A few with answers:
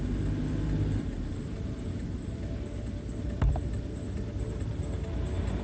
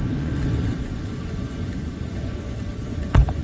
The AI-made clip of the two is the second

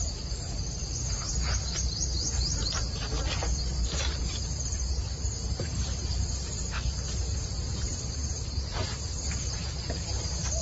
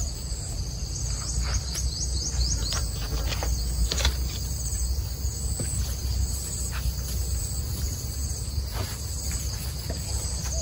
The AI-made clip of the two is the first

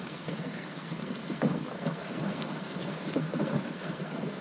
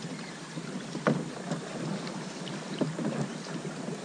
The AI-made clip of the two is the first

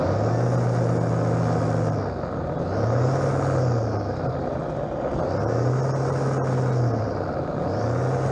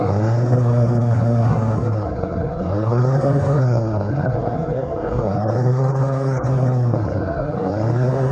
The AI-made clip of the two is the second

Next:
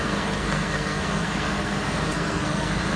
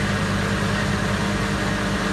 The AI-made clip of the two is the first